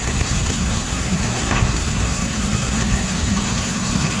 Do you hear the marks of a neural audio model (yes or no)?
yes